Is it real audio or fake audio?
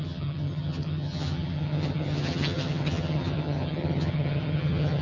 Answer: fake